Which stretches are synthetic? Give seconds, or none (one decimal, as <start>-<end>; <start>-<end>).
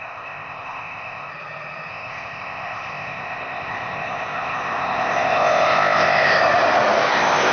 0.0-1.3; 1.9-6.4; 7.1-7.5